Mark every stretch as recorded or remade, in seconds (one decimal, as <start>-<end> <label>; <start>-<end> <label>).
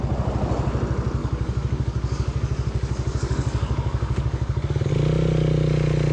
0.0-1.2 recorded; 1.2-4.9 remade; 4.9-6.1 recorded